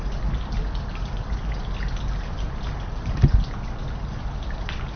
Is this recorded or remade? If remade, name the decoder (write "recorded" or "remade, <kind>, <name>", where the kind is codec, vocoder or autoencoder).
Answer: recorded